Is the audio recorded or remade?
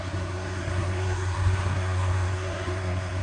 remade